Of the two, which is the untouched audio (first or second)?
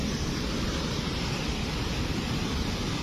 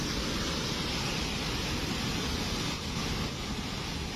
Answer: second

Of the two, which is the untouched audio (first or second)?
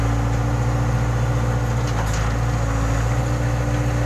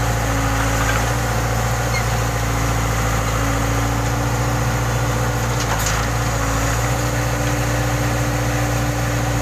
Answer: first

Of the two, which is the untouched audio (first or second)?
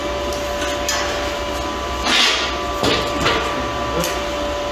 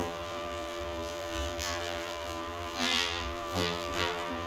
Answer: first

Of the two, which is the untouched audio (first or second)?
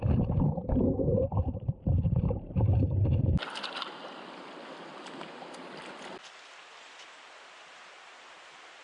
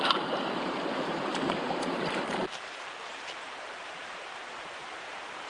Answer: first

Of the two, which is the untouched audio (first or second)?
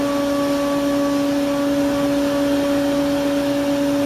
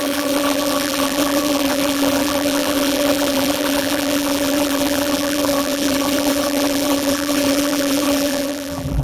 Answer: first